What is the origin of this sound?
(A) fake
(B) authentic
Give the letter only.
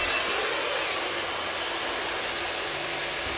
B